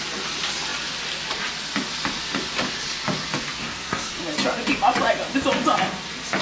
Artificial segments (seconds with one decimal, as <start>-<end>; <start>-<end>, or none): 3.6-4.1